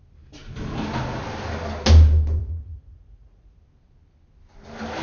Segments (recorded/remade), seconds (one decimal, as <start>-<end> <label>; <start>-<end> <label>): 0.0-2.4 recorded; 2.4-3.6 remade; 3.6-5.0 recorded